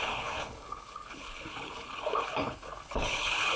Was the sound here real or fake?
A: fake